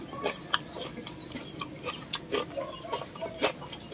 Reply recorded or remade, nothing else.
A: recorded